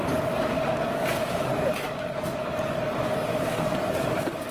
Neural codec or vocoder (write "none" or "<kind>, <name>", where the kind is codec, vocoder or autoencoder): codec, DAC